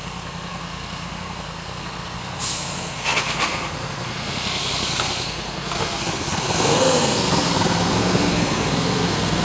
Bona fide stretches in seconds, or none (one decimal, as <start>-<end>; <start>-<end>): none